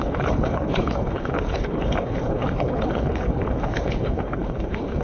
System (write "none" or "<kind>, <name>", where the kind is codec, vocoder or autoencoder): codec, HILCodec